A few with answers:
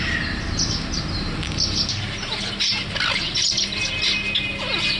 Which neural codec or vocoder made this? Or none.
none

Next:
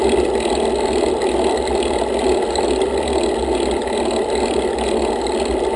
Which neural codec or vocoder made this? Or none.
none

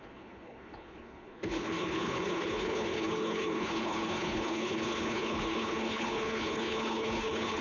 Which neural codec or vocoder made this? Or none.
codec, HILCodec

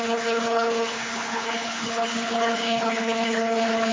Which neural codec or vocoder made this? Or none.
codec, HILCodec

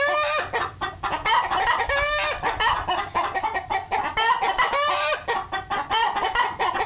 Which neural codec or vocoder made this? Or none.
none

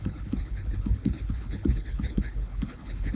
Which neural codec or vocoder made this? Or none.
codec, HILCodec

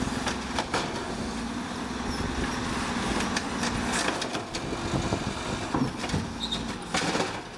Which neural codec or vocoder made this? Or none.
none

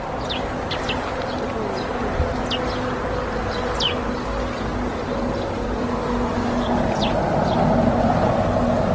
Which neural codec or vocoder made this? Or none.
none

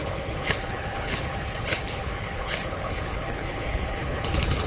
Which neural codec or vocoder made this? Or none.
codec, HILCodec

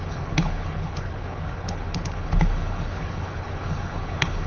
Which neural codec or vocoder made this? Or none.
codec, HILCodec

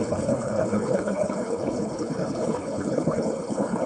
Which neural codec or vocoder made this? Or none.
codec, HILCodec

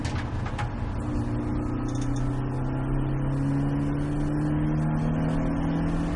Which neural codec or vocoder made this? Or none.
none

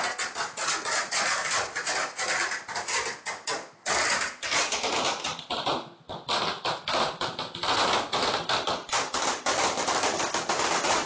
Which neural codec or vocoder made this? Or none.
none